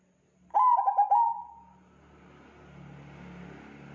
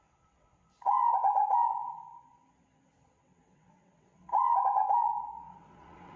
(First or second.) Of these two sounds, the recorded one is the first